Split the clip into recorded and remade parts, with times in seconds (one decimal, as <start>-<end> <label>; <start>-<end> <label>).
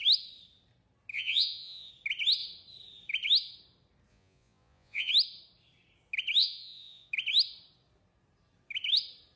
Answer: 0.0-1.1 recorded; 1.1-1.9 remade; 1.9-4.1 recorded; 4.1-5.1 remade; 5.1-6.4 recorded; 6.4-7.1 remade; 7.1-9.4 recorded